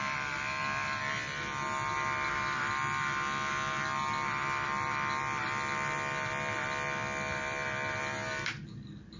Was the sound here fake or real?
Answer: real